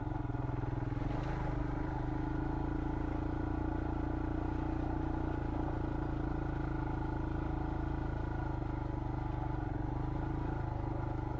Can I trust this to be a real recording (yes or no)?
yes